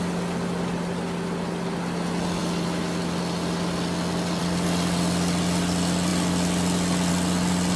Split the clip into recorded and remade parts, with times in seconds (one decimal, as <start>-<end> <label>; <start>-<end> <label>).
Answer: 0.0-7.8 recorded